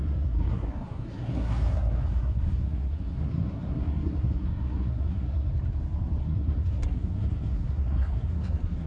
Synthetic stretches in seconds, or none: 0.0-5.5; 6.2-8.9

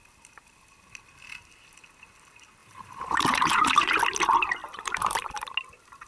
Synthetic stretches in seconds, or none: 2.6-3.7; 4.6-5.5

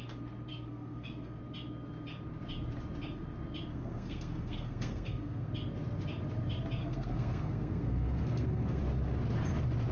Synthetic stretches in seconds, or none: 0.5-1.4; 3.7-5.5; 6.8-8.8

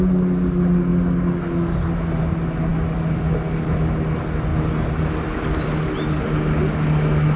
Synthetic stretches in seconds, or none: none

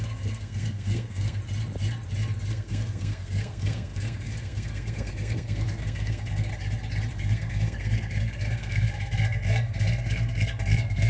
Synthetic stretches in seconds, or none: 0.0-1.4; 2.5-6.5; 7.1-11.1